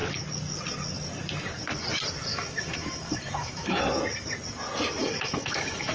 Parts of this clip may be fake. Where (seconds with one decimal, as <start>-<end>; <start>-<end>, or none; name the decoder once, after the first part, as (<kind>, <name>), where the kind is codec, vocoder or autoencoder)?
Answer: 2.3-3.8 (autoencoder, DAC-VAE); 5.0-5.9

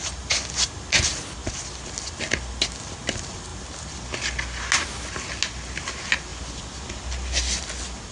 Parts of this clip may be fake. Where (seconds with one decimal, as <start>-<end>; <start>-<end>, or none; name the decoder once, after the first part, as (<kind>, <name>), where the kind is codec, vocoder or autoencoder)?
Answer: none